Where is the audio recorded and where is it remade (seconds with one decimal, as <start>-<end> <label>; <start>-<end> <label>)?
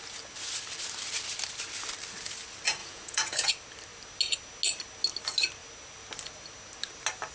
0.0-2.8 recorded; 2.8-3.5 remade; 3.5-7.3 recorded